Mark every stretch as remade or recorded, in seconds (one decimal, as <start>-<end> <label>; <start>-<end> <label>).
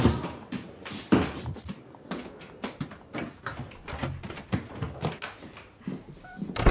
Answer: 0.0-6.7 recorded